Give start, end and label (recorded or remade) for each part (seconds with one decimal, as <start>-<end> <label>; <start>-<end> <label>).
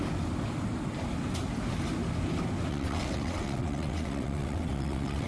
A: 0.0-2.7 recorded; 2.7-5.3 remade